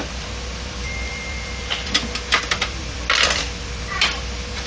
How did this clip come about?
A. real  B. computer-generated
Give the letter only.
B